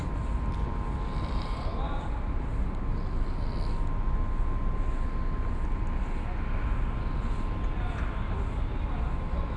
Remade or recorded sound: recorded